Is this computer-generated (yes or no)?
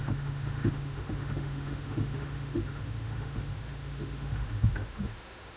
yes